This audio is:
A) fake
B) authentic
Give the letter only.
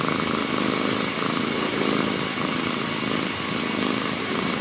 B